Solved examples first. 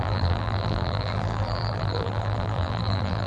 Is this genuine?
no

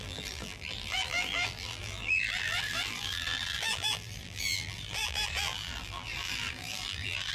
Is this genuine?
no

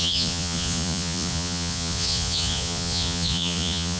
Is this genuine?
no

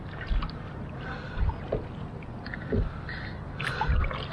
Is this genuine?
yes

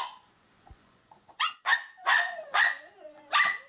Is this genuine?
no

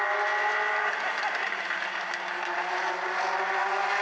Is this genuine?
yes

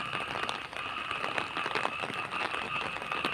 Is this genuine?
yes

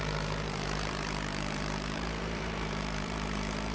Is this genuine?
no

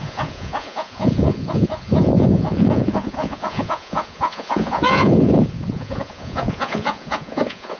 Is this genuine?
no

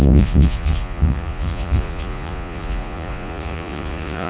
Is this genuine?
no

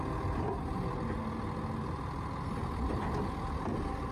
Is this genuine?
yes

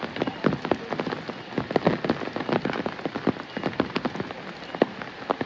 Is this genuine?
yes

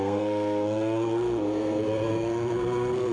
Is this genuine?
no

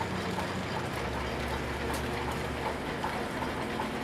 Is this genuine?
yes